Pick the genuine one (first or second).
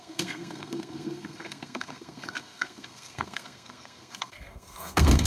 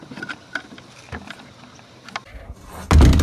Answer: second